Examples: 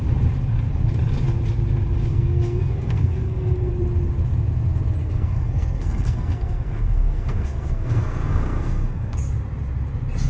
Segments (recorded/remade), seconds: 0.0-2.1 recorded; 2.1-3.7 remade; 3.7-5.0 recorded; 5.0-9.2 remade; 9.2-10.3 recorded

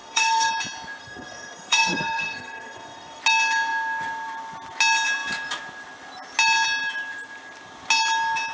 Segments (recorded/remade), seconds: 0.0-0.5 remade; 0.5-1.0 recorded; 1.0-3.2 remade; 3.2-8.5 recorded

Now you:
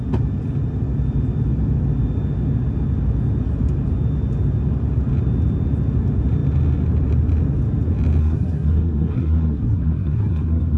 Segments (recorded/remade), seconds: 0.0-8.2 recorded; 8.2-10.8 remade